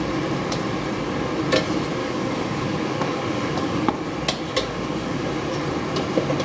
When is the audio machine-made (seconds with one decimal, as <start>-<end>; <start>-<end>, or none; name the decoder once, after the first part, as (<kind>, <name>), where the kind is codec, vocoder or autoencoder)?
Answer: 2.0-3.9 (codec, DAC); 4.5-5.2